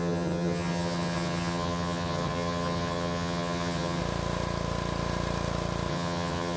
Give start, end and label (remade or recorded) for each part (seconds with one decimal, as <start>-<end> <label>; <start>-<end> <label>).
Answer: 0.0-4.0 remade; 4.0-5.9 recorded; 5.9-6.6 remade